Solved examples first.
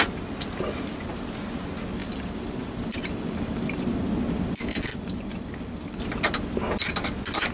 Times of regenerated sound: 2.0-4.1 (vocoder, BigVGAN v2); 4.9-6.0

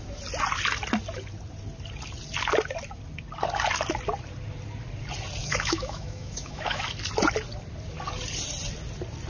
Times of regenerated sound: 5.4-6.8 (autoencoder, DAC-VAE)